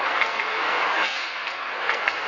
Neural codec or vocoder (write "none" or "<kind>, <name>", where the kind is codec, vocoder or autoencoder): codec, SNAC